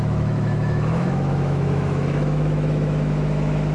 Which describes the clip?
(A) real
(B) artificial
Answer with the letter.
B